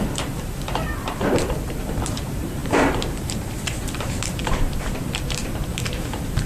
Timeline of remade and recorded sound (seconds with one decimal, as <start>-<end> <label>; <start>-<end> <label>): 0.0-6.5 remade